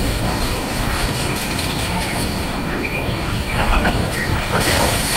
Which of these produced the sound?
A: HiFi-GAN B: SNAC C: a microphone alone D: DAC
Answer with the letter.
D